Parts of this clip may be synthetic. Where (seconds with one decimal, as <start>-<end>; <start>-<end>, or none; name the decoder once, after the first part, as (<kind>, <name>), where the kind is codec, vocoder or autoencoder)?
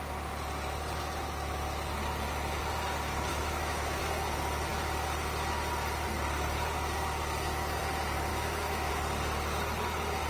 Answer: 3.3-4.0 (autoencoder, DAC-VAE); 8.3-8.9